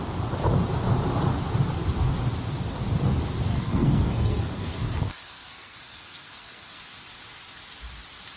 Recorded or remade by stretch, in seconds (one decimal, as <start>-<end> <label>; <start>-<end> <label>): 0.0-3.5 recorded; 3.5-6.8 remade; 6.8-8.4 recorded